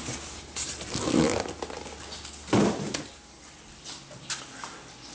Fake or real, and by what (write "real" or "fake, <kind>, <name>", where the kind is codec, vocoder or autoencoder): real